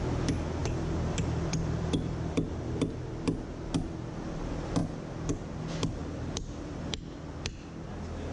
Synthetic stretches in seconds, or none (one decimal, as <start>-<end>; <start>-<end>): 0.6-2.9; 6.0-6.8